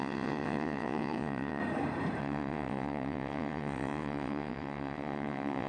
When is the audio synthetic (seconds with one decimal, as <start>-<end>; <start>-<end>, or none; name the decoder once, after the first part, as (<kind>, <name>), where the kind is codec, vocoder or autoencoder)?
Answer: 0.0-1.6 (vocoder, WaveNeXt); 2.2-5.7

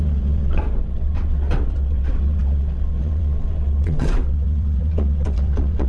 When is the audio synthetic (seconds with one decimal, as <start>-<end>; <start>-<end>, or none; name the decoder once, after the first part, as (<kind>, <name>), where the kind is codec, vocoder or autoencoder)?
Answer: 0.0-5.9 (vocoder, WaveNeXt)